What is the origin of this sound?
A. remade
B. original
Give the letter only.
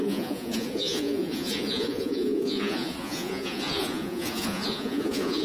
A